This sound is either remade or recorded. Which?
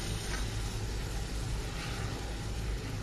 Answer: recorded